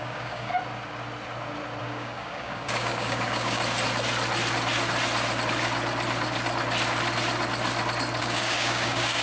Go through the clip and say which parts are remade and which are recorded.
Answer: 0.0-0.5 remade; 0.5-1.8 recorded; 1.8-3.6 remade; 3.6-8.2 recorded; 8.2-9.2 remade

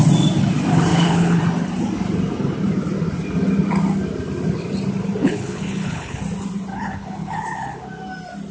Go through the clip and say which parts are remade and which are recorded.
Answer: 0.0-0.9 recorded; 0.9-1.4 remade; 1.4-5.2 recorded; 5.2-6.2 remade; 6.2-6.7 recorded; 6.7-7.8 remade; 7.8-8.5 recorded